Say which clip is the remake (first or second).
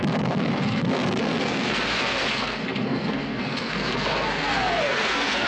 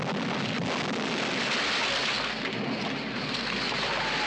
first